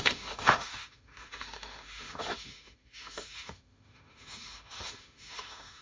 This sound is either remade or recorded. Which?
remade